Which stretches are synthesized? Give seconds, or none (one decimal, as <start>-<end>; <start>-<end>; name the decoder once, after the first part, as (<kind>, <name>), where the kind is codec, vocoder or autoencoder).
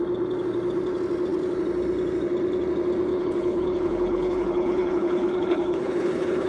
3.1-6.5 (codec, HILCodec)